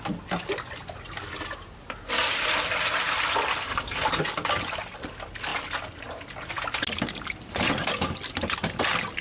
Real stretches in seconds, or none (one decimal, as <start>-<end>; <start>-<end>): 0.0-9.2